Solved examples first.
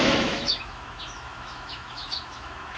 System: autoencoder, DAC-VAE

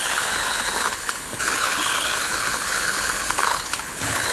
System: codec, HILCodec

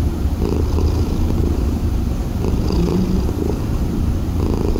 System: none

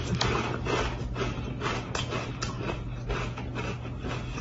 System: none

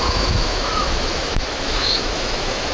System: autoencoder, DAC-VAE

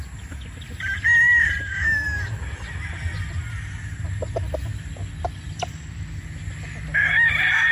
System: none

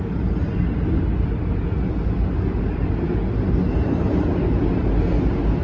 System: none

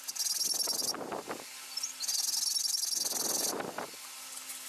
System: none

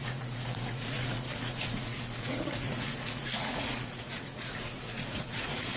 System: vocoder, Vocos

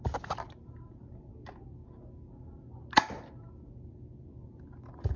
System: none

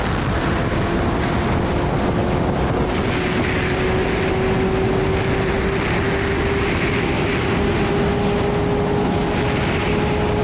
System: none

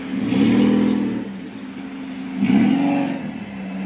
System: none